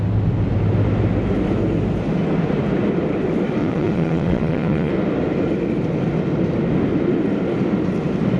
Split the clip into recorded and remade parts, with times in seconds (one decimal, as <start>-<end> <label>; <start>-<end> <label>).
0.0-3.6 recorded; 3.6-4.9 remade; 4.9-8.4 recorded

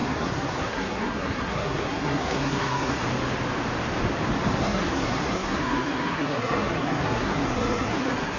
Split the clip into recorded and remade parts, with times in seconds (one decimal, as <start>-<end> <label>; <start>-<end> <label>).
0.0-3.0 remade; 3.0-4.6 recorded; 4.6-8.4 remade

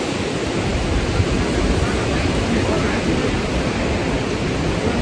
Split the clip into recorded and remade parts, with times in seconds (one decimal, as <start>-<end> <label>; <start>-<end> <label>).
0.0-5.0 recorded